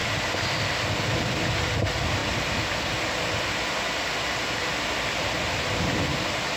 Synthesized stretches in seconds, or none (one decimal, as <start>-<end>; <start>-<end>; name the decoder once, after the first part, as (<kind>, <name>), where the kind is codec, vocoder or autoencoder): 1.0-2.2 (vocoder, BigVGAN v2)